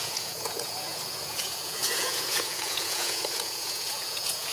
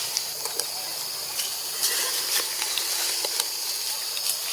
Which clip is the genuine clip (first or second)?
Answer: second